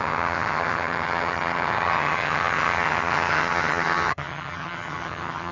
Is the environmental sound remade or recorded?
remade